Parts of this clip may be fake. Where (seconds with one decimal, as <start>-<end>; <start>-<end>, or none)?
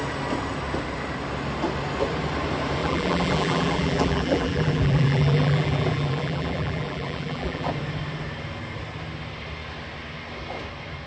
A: 2.8-7.7